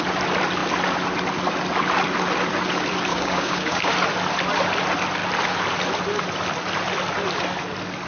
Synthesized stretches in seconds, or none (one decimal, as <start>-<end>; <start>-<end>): 3.1-3.9